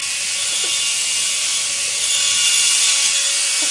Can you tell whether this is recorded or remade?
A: recorded